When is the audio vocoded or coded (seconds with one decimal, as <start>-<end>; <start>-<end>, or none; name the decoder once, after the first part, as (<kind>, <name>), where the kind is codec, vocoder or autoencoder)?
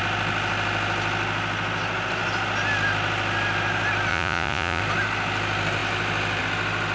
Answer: 4.1-4.8 (vocoder, Vocos)